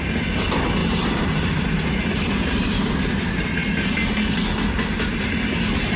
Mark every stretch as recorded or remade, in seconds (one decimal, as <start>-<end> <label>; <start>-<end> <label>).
0.0-0.8 recorded; 0.8-3.2 remade; 3.2-6.0 recorded